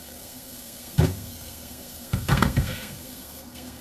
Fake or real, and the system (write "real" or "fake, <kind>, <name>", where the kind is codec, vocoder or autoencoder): fake, codec, SNAC